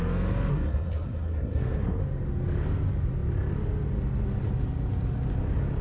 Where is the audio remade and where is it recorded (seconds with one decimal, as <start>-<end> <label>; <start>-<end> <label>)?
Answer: 0.0-0.5 recorded; 0.5-2.0 remade; 2.0-5.8 recorded